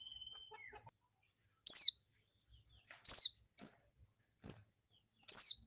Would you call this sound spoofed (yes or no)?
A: no